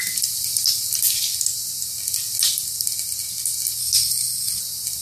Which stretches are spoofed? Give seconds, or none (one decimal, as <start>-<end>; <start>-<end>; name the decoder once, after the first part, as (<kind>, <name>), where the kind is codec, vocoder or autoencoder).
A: 3.8-4.6 (codec, SNAC)